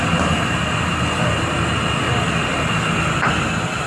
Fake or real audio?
real